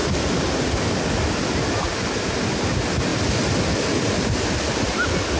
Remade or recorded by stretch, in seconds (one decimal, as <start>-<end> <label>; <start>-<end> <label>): 0.0-5.4 recorded